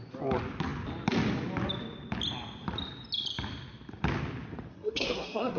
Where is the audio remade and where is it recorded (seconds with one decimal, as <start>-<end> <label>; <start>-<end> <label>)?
0.0-4.7 recorded; 4.7-5.6 remade

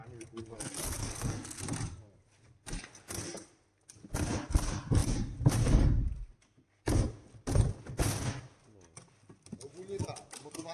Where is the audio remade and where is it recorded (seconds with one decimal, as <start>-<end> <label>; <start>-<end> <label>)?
0.0-1.0 recorded; 1.0-1.6 remade; 1.6-10.7 recorded

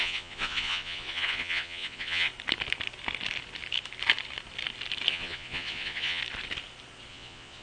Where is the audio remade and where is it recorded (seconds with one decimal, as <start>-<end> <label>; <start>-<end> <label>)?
0.0-2.3 remade; 2.3-5.1 recorded; 5.1-6.2 remade; 6.2-7.1 recorded; 7.1-7.6 remade

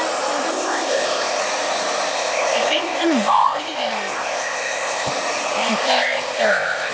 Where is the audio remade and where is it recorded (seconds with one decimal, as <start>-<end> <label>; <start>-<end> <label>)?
0.0-0.5 recorded; 0.5-1.4 remade; 1.4-2.1 recorded; 2.1-5.1 remade; 5.1-5.6 recorded; 5.6-6.9 remade

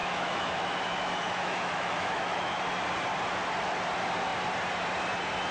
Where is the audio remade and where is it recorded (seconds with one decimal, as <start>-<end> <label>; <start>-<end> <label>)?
0.0-2.6 remade; 2.6-5.5 recorded

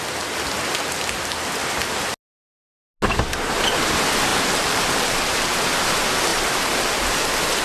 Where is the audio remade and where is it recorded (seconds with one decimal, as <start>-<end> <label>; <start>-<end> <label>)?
0.0-4.3 recorded; 4.3-5.6 remade; 5.6-6.3 recorded; 6.3-6.9 remade; 6.9-7.6 recorded

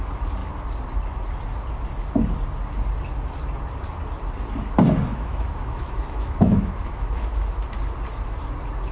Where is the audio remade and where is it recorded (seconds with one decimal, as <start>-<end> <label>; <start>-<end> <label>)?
0.0-5.1 recorded; 5.1-7.8 remade; 7.8-8.9 recorded

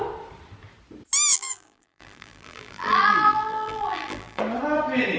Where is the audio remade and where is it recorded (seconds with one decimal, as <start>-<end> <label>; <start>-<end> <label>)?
0.0-1.3 recorded; 1.3-4.4 remade; 4.4-5.2 recorded